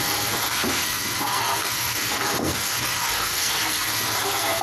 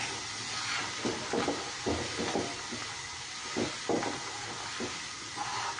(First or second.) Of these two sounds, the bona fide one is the second